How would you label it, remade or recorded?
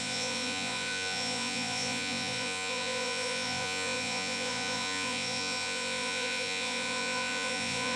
remade